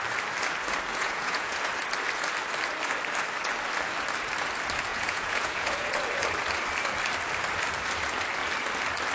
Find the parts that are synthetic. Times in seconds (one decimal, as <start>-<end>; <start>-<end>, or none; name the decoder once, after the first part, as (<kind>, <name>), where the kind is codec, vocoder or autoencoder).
0.9-1.7 (vocoder, Vocos); 4.9-5.9